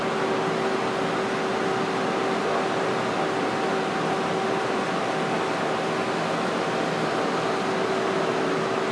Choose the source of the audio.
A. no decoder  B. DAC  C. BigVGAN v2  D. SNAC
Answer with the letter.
A